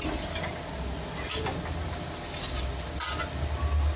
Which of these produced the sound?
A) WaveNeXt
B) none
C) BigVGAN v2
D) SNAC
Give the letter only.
B